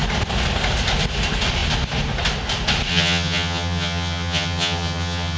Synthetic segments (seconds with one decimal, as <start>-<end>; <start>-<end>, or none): 2.9-5.4